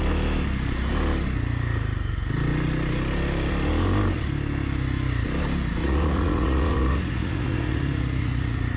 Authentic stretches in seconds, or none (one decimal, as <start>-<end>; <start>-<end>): 0.0-5.8